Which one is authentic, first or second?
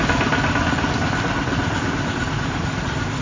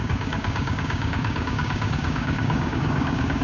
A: first